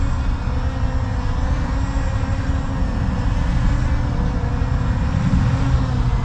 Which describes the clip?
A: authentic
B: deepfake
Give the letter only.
A